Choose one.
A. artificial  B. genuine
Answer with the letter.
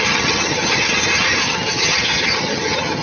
A